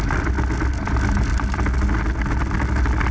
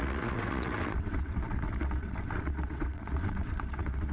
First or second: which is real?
first